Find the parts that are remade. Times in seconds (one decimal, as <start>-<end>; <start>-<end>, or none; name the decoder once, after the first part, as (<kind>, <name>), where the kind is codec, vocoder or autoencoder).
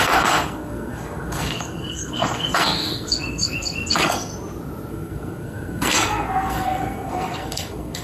0.0-4.3 (codec, SNAC); 4.9-8.0